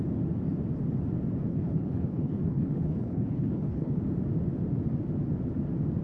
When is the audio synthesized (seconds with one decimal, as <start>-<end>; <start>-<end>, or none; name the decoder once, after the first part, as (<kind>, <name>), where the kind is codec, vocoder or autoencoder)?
1.5-4.0 (codec, HILCodec)